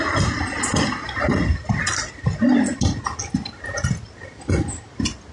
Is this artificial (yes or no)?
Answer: no